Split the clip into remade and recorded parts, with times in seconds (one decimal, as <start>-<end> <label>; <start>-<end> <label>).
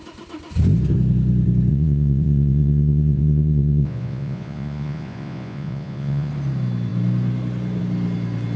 0.0-1.7 recorded; 1.7-6.3 remade; 6.3-8.6 recorded